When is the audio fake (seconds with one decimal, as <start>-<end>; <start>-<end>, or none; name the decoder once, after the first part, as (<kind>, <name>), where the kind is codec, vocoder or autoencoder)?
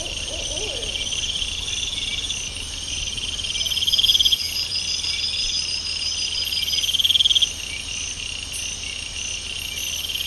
2.1-3.0 (vocoder, BigVGAN v2); 4.1-6.4